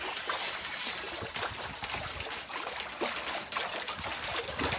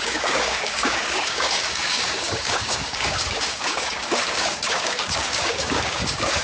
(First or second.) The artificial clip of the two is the second